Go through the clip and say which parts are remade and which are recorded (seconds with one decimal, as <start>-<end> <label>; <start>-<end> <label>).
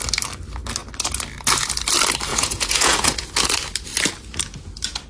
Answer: 0.0-2.3 recorded; 2.3-3.3 remade; 3.3-5.1 recorded